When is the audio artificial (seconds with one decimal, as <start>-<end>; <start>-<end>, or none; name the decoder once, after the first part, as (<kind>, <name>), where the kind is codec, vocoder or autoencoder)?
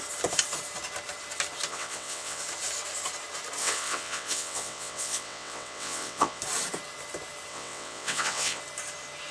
1.7-2.4 (vocoder, WaveNeXt); 3.6-6.4; 7.5-8.6